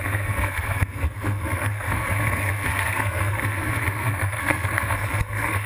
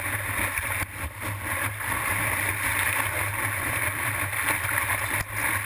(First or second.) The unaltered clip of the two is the second